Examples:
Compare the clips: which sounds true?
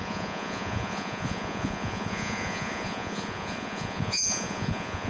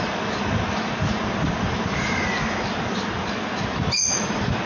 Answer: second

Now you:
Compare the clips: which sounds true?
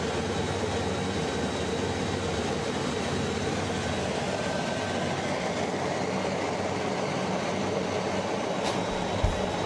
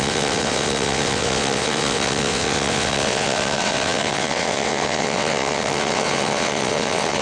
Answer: first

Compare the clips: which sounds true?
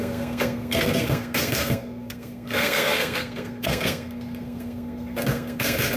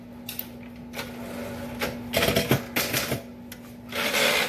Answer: second